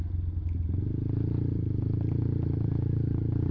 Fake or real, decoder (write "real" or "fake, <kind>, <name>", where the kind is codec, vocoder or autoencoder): real